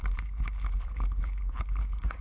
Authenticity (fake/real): fake